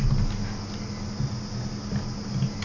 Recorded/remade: recorded